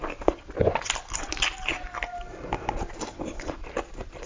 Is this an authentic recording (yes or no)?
yes